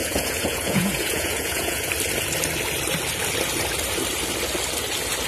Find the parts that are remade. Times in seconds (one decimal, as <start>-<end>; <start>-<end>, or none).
0.0-1.9